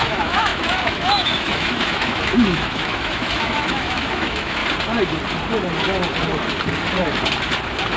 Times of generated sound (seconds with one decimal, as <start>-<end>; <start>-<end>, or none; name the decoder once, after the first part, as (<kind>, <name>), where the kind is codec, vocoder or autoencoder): 0.0-4.6 (autoencoder, DAC-VAE)

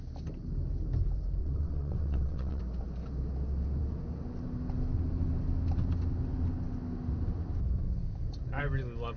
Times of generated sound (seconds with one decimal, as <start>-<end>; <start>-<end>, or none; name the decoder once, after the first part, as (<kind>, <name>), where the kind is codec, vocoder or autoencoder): 1.4-2.6 (vocoder, WaveNeXt)

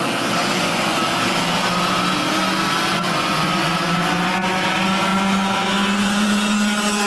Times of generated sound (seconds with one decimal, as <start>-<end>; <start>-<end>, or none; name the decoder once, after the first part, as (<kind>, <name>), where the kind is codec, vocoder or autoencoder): 0.4-1.0 (vocoder, Vocos); 2.9-3.7

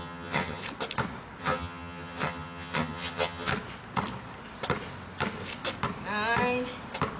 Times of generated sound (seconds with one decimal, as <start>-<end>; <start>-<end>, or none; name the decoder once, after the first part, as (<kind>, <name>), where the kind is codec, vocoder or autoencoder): 0.0-0.6 (vocoder, HiFi-GAN); 1.4-3.5

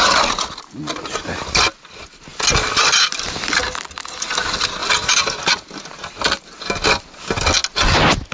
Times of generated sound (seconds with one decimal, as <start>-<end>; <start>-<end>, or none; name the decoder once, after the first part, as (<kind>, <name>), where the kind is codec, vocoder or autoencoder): none

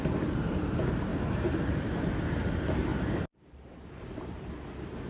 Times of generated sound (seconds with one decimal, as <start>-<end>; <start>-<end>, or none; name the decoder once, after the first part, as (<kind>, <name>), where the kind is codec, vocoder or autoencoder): 1.1-2.0 (vocoder, BigVGAN v2); 2.9-4.4